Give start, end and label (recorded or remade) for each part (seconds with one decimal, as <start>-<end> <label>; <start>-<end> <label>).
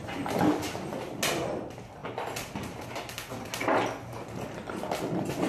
0.0-5.5 recorded